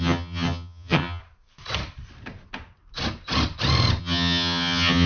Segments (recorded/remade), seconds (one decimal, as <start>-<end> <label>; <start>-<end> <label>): 0.0-1.2 remade; 1.2-4.0 recorded; 4.0-5.1 remade